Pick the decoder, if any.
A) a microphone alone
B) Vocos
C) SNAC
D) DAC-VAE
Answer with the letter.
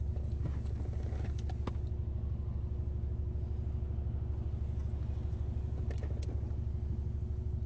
A